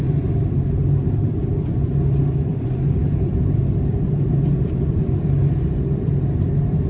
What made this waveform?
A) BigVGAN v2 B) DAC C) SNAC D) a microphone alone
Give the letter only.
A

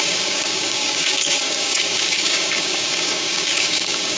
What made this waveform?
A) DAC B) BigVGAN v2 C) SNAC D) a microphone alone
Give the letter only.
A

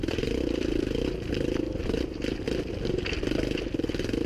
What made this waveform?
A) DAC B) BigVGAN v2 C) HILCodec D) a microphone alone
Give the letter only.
D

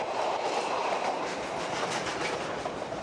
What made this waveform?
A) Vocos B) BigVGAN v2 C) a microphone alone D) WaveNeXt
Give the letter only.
C